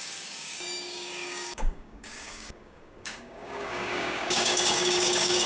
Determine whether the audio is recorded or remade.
remade